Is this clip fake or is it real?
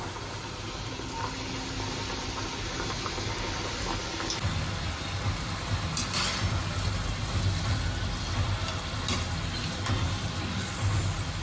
real